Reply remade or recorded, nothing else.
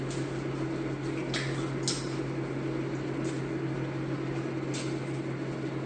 recorded